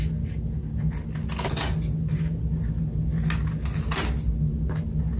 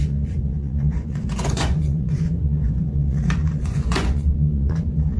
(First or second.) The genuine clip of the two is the first